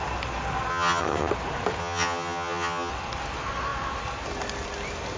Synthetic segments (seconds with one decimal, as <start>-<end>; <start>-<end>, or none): 0.7-1.3; 1.8-2.9